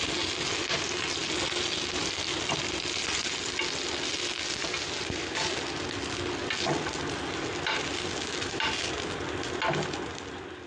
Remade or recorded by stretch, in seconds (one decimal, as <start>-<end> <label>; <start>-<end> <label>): 0.0-10.7 recorded